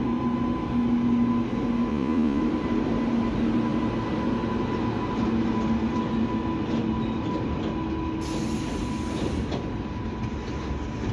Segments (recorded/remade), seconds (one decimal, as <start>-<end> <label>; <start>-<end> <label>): 0.0-1.9 recorded; 1.9-2.4 remade; 2.4-11.1 recorded